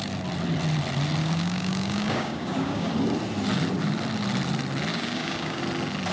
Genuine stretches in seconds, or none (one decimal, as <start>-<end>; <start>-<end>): 0.0-1.2; 2.9-4.9; 5.6-6.1